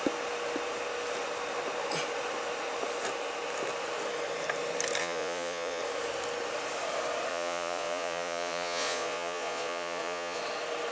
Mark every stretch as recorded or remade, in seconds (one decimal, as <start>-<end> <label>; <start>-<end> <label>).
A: 0.0-5.0 recorded; 5.0-5.8 remade; 5.8-7.3 recorded; 7.3-10.4 remade; 10.4-10.9 recorded